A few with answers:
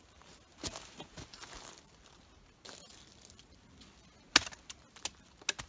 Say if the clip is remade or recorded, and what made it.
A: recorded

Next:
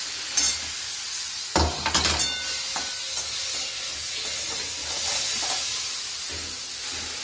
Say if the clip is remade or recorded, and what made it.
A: recorded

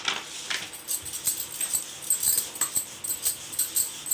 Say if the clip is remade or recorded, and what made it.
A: recorded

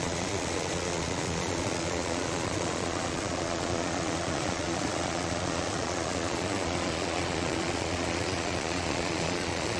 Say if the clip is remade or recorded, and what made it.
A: remade, vocoder, Vocos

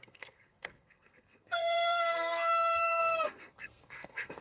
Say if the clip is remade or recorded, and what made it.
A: remade, codec, SNAC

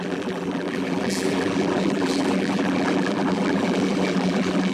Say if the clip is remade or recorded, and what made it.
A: remade, vocoder, BigVGAN v2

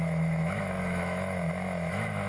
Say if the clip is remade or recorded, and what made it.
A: remade, autoencoder, DAC-VAE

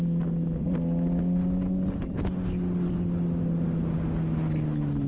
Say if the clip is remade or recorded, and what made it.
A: recorded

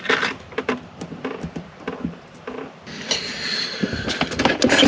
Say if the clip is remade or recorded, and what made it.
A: remade, vocoder, BigVGAN v2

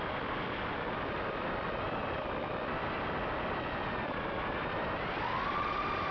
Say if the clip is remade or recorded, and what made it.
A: recorded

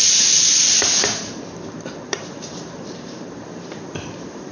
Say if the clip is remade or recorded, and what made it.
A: remade, vocoder, BigVGAN v2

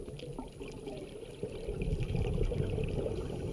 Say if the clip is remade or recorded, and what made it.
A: recorded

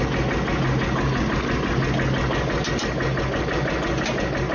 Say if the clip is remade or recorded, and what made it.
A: recorded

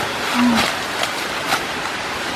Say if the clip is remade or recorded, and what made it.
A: recorded